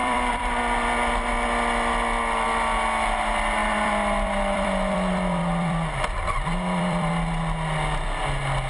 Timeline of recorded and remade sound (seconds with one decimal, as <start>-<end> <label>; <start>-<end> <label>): 0.0-0.6 remade; 0.6-3.6 recorded; 3.6-7.1 remade; 7.1-8.7 recorded